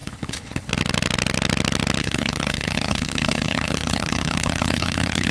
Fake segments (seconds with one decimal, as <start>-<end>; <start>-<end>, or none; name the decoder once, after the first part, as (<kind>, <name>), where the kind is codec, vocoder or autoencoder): 0.0-0.7 (codec, HILCodec); 2.0-5.3